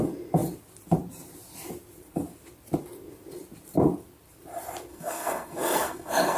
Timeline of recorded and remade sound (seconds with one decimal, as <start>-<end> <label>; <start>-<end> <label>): 0.0-4.9 recorded; 4.9-6.4 remade